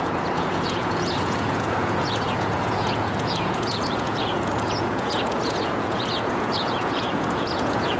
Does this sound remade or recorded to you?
remade